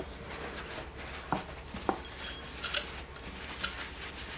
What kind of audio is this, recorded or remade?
recorded